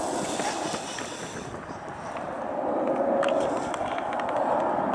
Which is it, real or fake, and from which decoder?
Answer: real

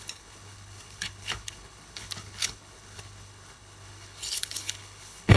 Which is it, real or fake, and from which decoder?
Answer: fake, codec, HILCodec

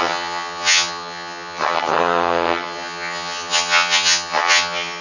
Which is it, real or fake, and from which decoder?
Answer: fake, vocoder, HiFi-GAN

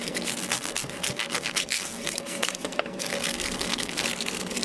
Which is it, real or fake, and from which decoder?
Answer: fake, codec, SNAC